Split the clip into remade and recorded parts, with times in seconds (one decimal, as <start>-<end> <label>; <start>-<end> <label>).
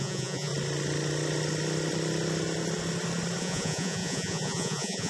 0.0-0.5 remade; 0.5-3.4 recorded; 3.4-5.1 remade